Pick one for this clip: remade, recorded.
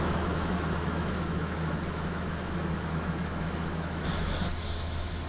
remade